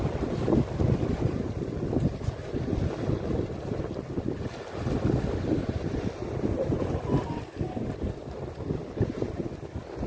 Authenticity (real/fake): real